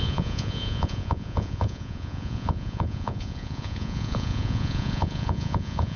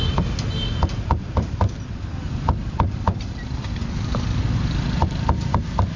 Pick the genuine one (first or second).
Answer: second